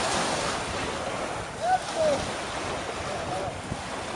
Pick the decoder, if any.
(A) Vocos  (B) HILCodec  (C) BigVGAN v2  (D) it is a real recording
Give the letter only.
D